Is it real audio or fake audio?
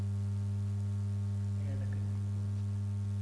real